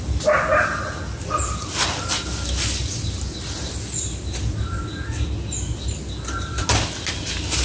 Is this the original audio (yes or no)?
yes